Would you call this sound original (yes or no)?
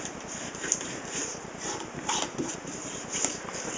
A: no